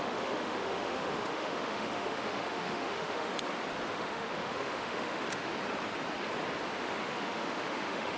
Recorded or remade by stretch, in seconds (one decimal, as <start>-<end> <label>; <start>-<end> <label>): 0.0-3.3 remade; 3.3-3.9 recorded; 3.9-5.5 remade; 5.5-6.8 recorded; 6.8-8.2 remade